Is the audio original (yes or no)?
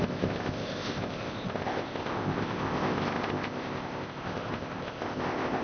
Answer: no